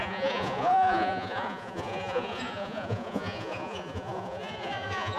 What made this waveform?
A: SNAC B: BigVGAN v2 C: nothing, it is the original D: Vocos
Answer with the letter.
D